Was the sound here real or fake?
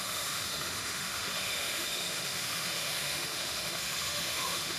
fake